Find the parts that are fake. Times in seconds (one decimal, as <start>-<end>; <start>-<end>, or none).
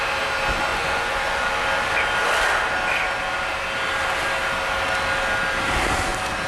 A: 0.7-1.5